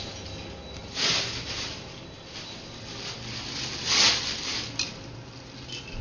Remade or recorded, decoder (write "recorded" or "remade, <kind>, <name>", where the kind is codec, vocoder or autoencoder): recorded